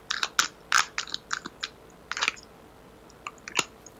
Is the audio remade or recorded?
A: recorded